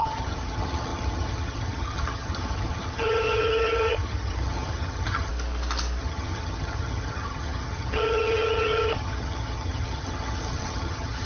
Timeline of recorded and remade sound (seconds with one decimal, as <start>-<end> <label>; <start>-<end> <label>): 0.0-5.3 remade; 5.3-6.0 recorded; 6.0-11.3 remade